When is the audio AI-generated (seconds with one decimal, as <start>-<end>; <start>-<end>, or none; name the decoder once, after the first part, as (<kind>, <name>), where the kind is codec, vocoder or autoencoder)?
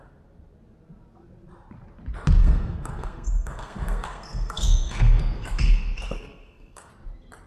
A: 2.4-6.9 (codec, SNAC)